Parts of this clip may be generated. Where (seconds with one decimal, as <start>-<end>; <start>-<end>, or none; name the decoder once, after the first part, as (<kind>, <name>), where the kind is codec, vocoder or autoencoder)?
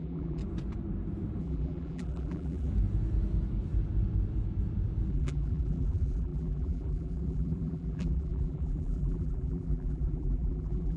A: 0.0-0.4 (vocoder, BigVGAN v2); 1.4-2.7; 5.1-11.0